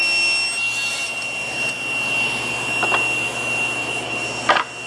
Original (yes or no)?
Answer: yes